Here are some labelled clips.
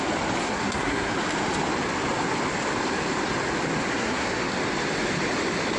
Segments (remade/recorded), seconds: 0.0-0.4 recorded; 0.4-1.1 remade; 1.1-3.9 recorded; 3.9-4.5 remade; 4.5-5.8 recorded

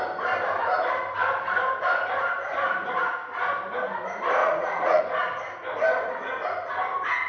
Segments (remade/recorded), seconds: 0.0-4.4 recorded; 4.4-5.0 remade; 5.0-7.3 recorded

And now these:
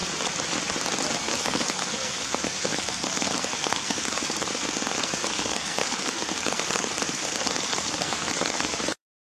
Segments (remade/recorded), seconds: 0.0-1.1 recorded; 1.1-9.3 remade

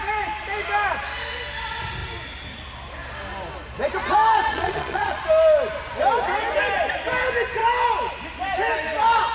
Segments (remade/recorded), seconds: 0.0-4.4 recorded; 4.4-5.2 remade; 5.2-9.3 recorded

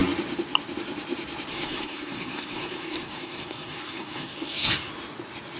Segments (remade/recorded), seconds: 0.0-1.5 recorded; 1.5-4.9 remade; 4.9-5.6 recorded

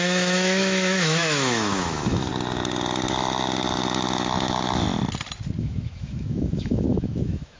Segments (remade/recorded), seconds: 0.0-2.3 remade; 2.3-5.6 recorded; 5.6-7.6 remade